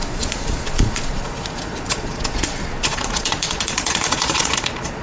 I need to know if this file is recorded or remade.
remade